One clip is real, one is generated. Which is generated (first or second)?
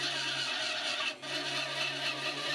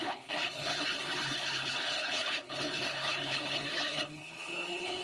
second